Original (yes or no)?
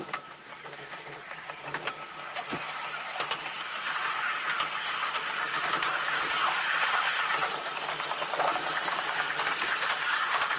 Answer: yes